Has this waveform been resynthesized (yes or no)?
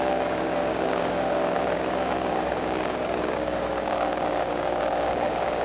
yes